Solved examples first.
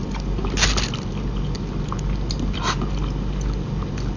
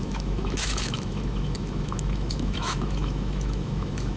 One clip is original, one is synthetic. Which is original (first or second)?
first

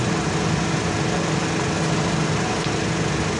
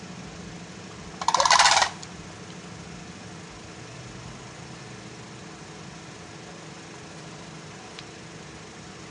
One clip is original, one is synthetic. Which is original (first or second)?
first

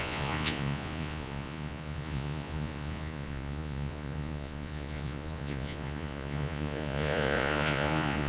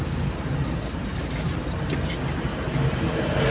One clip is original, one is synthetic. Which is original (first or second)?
second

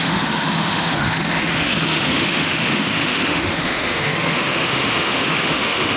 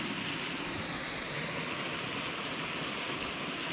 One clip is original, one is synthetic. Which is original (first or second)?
second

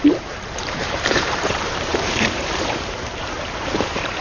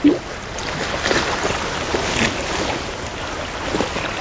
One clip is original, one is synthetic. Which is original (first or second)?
second